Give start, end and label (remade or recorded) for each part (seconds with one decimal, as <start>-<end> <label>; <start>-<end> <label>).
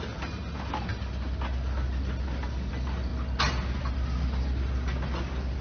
0.0-5.6 recorded